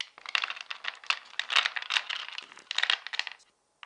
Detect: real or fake real